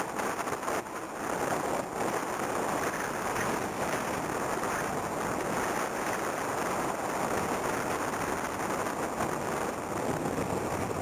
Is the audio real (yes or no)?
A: yes